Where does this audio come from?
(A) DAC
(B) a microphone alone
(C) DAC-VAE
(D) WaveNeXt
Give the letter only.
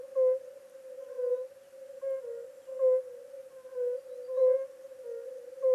B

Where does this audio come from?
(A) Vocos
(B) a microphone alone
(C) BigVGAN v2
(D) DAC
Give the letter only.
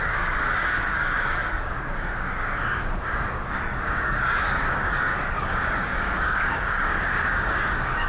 D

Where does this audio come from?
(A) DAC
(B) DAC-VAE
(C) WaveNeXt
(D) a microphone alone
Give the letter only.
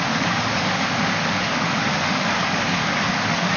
A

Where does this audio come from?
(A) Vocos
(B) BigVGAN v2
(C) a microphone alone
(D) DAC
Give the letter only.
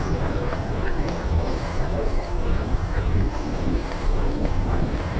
D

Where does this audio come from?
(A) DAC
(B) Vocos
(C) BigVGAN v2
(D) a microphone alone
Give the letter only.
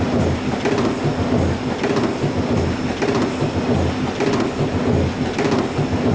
D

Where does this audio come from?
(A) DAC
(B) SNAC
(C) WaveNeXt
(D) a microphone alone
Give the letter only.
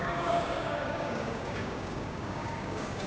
A